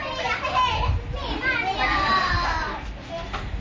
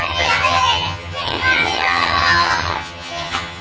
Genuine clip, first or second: first